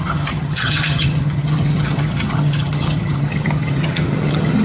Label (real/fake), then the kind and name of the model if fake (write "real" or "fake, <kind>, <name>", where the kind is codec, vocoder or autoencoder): fake, vocoder, HiFi-GAN